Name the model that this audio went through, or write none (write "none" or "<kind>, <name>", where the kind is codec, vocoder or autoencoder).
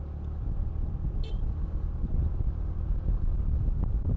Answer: none